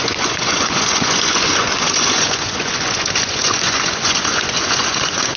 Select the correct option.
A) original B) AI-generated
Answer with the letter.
B